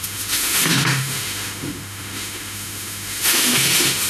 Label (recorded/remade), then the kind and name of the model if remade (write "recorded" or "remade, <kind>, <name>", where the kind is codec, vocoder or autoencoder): remade, autoencoder, DAC-VAE